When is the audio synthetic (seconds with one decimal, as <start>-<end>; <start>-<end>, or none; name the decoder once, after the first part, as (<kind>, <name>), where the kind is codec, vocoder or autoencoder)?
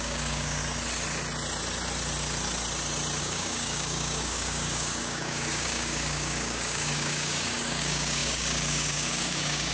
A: 0.0-0.6 (codec, DAC); 3.2-9.7